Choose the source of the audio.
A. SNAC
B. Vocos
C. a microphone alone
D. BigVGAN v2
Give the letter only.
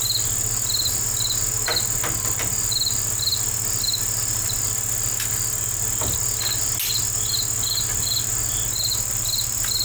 C